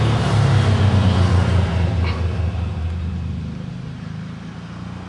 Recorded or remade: recorded